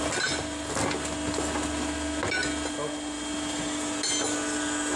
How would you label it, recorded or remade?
recorded